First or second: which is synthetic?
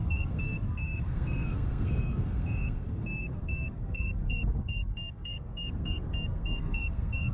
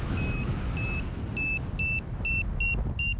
first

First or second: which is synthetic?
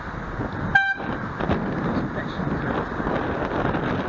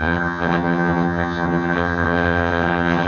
second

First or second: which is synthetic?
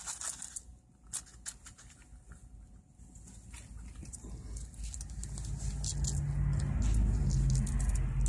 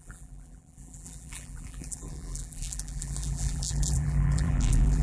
second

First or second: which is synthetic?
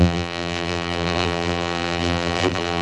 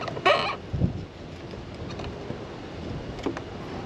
first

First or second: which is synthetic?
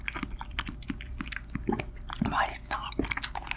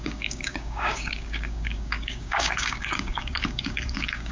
second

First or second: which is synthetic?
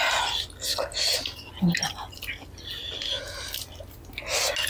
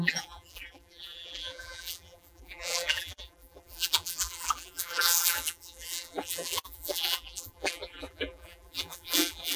second